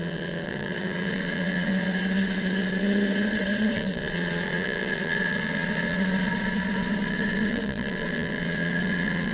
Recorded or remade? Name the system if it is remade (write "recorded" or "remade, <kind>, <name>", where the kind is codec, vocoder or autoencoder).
remade, vocoder, Vocos